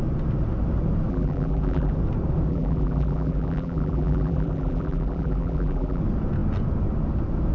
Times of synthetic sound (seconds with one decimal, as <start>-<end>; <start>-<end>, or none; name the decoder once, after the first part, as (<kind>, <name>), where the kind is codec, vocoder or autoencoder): 1.1-1.9 (vocoder, BigVGAN v2); 2.5-6.0